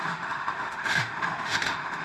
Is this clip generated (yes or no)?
yes